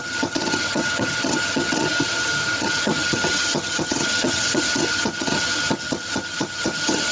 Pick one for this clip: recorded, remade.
remade